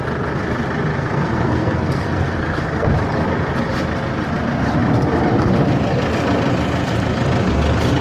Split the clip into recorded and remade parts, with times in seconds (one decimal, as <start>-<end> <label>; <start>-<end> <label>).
0.0-0.9 recorded; 0.9-2.9 remade; 2.9-8.0 recorded

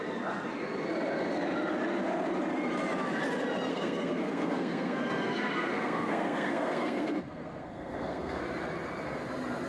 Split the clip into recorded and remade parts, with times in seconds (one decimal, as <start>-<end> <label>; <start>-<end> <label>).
0.0-3.7 recorded; 3.7-8.4 remade; 8.4-9.7 recorded

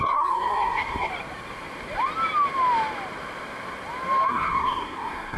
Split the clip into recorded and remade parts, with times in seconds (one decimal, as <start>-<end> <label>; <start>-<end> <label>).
0.0-1.1 remade; 1.1-4.3 recorded; 4.3-5.4 remade

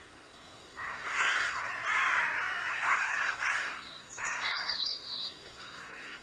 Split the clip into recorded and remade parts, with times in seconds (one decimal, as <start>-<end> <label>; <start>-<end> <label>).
0.0-1.7 remade; 1.7-2.7 recorded; 2.7-6.2 remade

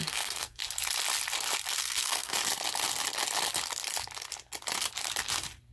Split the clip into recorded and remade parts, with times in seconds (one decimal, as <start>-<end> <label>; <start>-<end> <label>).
0.0-0.6 remade; 0.6-1.8 recorded; 1.8-2.4 remade; 2.4-5.7 recorded

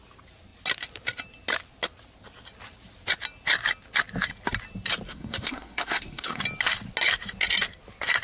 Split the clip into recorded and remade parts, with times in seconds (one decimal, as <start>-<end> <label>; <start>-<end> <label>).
0.0-5.1 recorded; 5.1-6.4 remade; 6.4-8.2 recorded

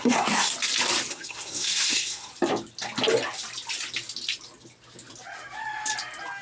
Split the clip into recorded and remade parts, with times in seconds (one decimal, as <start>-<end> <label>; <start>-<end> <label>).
0.0-0.5 remade; 0.5-1.1 recorded; 1.1-2.3 remade; 2.3-6.4 recorded